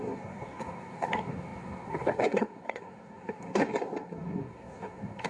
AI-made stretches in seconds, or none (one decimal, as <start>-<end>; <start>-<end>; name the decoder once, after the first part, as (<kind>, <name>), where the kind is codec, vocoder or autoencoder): 0.0-5.3 (codec, SNAC)